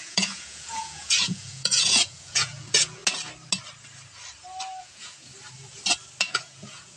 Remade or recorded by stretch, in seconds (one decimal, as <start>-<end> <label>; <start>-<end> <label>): 0.0-3.0 remade; 3.0-4.8 recorded; 4.8-5.3 remade; 5.3-6.2 recorded; 6.2-7.0 remade